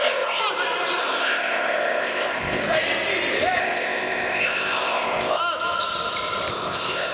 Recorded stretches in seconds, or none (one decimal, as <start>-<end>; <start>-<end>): 0.4-1.0; 2.6-3.6; 5.4-6.5

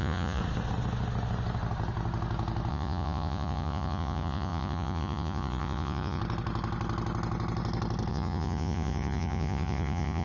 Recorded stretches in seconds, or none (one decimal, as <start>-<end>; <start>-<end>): 0.4-2.7; 6.2-8.1

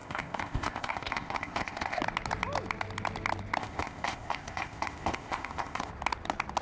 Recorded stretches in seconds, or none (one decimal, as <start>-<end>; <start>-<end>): 2.0-3.6; 5.9-6.6

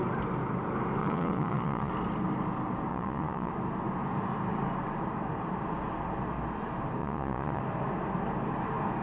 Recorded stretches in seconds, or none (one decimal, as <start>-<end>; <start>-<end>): 0.0-1.0; 1.9-2.9; 3.5-7.0; 7.6-9.0

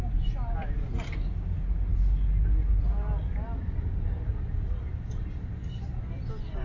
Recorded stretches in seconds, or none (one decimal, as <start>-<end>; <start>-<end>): 0.0-6.6